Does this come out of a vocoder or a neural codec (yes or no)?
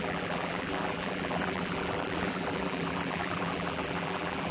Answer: yes